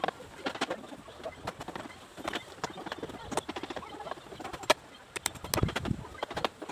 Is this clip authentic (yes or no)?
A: yes